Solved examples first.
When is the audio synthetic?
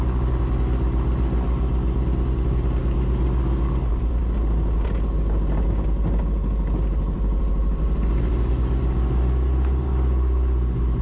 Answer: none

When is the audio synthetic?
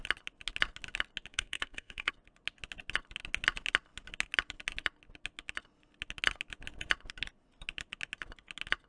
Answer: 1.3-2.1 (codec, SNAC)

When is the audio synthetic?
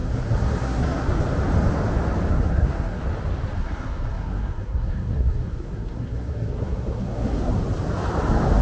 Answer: 0.0-1.2 (codec, SNAC); 2.3-3.0; 3.6-7.5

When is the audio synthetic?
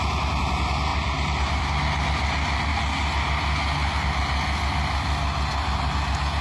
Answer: 0.9-1.6 (vocoder, BigVGAN v2)